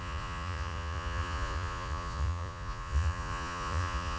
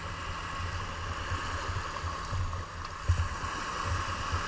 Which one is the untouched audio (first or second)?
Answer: second